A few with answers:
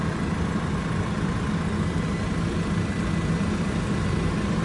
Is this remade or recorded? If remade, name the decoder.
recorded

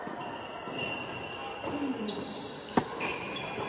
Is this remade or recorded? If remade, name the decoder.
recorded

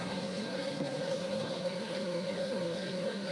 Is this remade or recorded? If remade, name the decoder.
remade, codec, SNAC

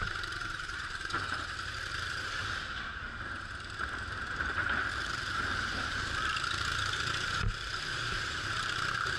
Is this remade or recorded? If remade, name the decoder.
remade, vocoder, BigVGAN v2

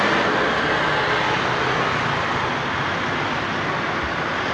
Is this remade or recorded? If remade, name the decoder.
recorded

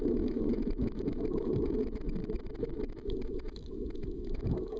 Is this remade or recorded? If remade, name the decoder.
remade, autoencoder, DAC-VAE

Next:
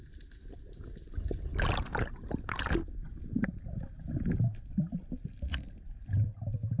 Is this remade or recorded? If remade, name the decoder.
recorded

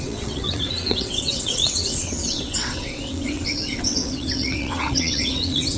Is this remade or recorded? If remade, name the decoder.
remade, vocoder, WaveNeXt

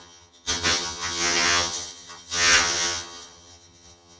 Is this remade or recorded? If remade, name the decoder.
remade, vocoder, HiFi-GAN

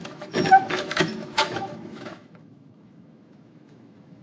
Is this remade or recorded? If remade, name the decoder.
remade, autoencoder, DAC-VAE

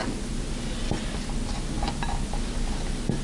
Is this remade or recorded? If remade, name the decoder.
recorded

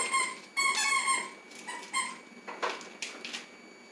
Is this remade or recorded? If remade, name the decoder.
recorded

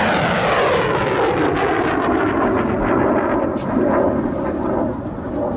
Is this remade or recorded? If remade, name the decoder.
recorded